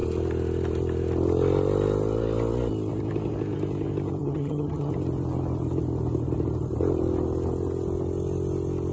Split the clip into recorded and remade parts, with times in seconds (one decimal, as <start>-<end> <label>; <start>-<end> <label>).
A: 0.0-4.2 recorded; 4.2-4.9 remade; 4.9-8.9 recorded